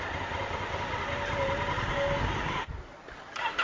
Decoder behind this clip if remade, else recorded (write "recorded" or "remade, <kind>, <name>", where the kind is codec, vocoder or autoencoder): recorded